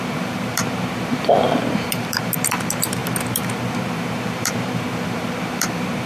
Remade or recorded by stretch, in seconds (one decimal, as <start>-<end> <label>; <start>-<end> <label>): 0.0-6.1 remade